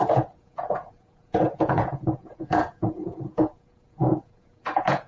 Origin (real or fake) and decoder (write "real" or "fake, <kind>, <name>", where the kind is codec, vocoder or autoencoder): fake, vocoder, Vocos